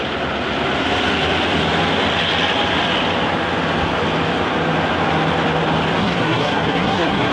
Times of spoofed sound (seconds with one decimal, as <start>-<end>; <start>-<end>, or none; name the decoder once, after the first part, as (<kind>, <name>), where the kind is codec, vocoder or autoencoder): 6.0-7.3 (codec, SNAC)